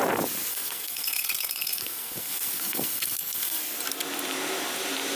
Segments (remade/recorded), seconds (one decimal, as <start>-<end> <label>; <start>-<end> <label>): 0.0-0.5 recorded; 0.5-3.6 remade; 3.6-5.2 recorded